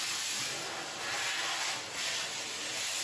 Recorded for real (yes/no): yes